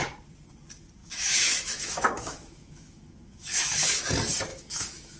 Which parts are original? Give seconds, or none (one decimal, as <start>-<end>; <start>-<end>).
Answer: 0.0-1.0; 4.1-4.5